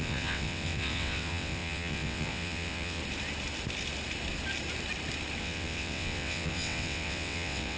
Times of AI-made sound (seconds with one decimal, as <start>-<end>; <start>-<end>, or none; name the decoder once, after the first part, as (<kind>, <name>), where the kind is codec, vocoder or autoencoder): 0.0-3.0 (vocoder, WaveNeXt); 5.4-7.8